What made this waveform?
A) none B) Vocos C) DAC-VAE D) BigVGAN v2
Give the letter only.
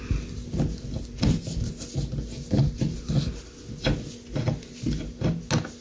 A